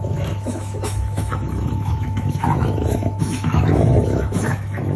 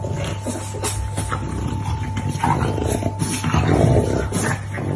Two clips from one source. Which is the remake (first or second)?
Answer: first